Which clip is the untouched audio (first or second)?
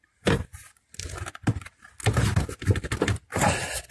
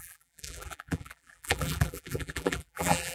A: first